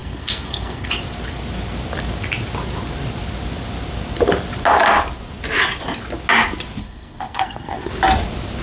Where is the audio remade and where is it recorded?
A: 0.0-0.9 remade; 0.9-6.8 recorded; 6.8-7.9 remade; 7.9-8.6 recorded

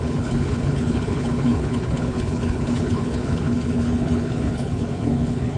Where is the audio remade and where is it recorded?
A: 0.0-5.6 remade

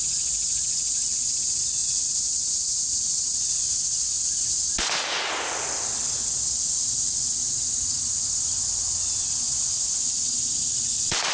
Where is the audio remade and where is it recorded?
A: 0.0-11.3 recorded